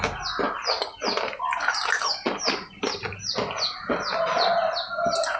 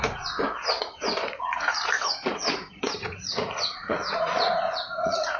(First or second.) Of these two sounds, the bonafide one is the first